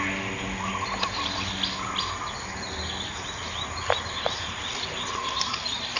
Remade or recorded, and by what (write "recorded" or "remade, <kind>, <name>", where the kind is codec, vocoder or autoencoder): recorded